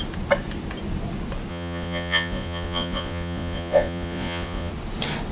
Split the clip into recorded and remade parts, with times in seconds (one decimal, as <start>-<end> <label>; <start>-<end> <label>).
0.0-1.5 recorded; 1.5-4.7 remade; 4.7-5.3 recorded